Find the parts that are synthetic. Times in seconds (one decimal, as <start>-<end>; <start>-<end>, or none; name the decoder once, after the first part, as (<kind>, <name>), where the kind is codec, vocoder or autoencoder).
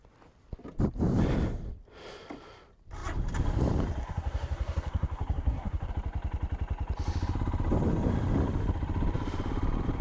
4.0-5.9 (codec, SNAC)